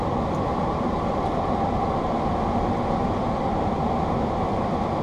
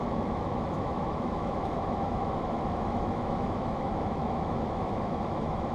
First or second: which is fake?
second